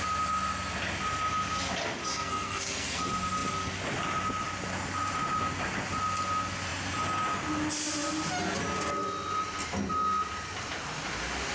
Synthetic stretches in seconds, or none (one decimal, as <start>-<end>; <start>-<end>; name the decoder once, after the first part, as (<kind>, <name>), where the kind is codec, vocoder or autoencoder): 2.1-3.0 (codec, SNAC)